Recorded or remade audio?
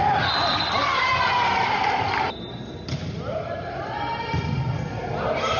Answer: recorded